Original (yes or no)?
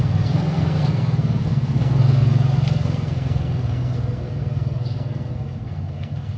no